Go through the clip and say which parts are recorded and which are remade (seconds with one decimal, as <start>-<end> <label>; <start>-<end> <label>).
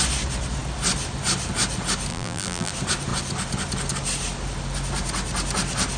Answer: 0.0-2.1 recorded; 2.1-2.7 remade; 2.7-6.0 recorded